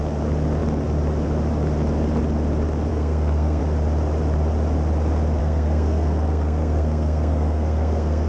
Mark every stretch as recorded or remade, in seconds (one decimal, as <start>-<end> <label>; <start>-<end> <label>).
0.0-2.9 recorded; 2.9-3.6 remade; 3.6-5.4 recorded; 5.4-8.3 remade

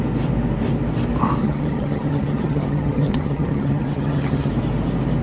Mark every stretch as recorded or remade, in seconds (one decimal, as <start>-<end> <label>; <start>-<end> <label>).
0.0-1.4 recorded; 1.4-4.5 remade; 4.5-5.2 recorded